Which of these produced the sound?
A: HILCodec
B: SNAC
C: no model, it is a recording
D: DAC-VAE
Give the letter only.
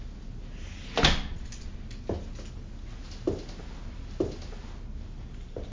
C